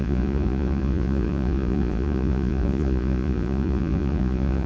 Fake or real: fake